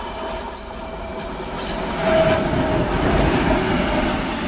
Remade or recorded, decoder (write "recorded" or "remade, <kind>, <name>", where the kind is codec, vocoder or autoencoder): recorded